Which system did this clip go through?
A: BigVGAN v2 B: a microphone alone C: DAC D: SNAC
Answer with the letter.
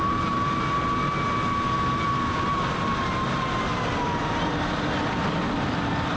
B